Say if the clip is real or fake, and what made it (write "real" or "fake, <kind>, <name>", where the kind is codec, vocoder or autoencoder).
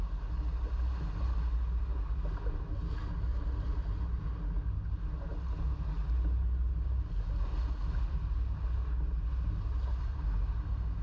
real